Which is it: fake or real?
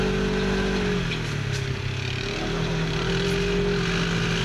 real